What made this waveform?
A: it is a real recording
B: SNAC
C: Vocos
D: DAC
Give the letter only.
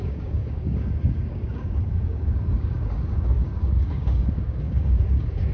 D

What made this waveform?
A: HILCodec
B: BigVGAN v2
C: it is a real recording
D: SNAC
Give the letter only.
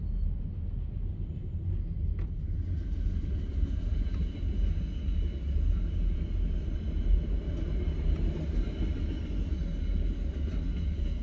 C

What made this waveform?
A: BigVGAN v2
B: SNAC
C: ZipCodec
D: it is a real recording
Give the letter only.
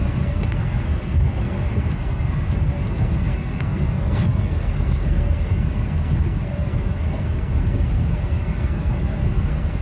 B